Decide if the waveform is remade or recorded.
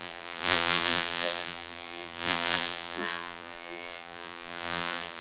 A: remade